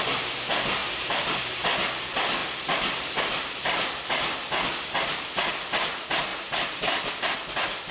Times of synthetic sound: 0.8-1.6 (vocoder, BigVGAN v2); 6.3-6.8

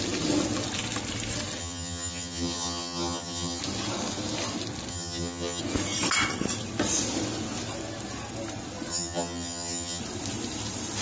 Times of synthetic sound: 1.6-3.6 (vocoder, HiFi-GAN); 4.9-5.6; 8.9-10.0